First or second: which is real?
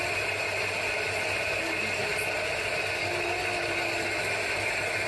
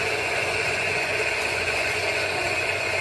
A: first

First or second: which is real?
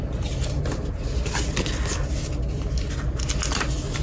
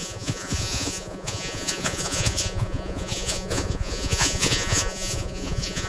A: first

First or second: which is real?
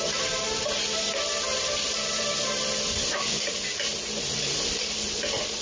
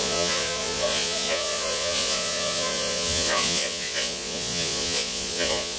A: first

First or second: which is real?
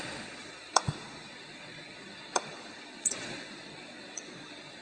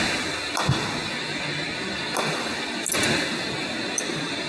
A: second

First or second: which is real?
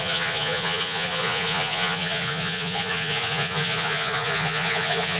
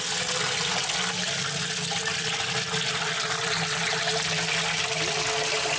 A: second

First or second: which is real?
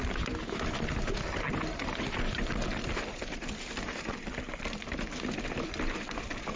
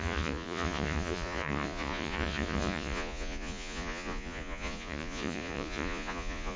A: first